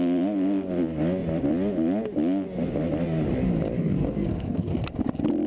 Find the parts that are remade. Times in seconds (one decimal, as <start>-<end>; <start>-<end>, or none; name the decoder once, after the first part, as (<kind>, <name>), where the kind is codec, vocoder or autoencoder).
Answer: 3.8-4.8 (codec, SNAC)